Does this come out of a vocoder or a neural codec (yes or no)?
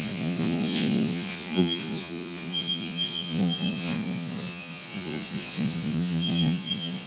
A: yes